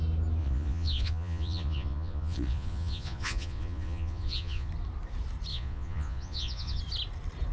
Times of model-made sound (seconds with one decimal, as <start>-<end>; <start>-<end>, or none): 0.4-4.7; 5.5-6.8